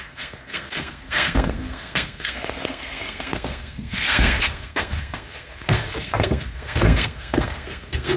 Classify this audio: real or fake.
fake